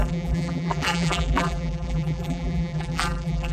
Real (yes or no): no